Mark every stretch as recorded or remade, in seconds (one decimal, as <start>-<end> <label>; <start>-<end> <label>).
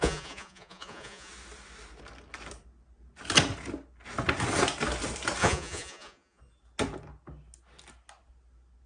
0.0-1.3 remade; 1.3-5.4 recorded; 5.4-6.4 remade; 6.4-8.9 recorded